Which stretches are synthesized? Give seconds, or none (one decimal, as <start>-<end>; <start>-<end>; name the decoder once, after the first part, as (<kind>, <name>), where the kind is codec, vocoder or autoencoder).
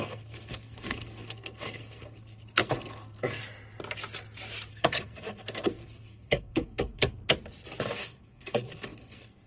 0.0-3.4 (codec, SNAC); 4.7-7.2; 7.8-9.5